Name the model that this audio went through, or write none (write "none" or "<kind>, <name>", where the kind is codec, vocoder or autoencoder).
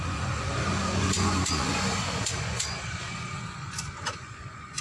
vocoder, Vocos